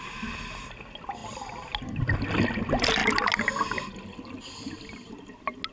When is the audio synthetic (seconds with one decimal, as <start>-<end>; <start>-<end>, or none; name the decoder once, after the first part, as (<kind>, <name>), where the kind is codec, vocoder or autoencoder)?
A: none